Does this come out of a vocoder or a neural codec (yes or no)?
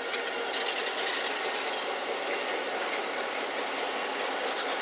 no